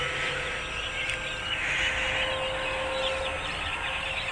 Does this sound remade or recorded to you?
recorded